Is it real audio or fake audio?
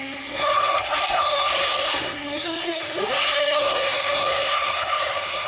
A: fake